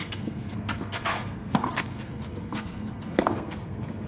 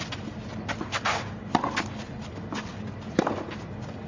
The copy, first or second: first